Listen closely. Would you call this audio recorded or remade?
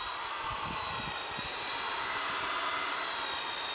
recorded